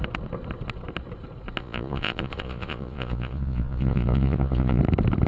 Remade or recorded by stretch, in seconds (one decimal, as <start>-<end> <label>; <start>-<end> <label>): 0.0-1.6 recorded; 1.6-4.8 remade; 4.8-5.3 recorded